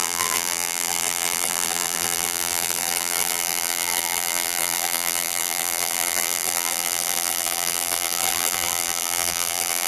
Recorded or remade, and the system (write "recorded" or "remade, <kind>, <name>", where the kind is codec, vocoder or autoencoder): remade, vocoder, BigVGAN v2